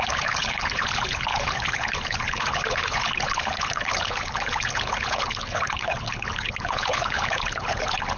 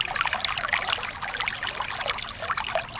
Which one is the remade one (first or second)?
first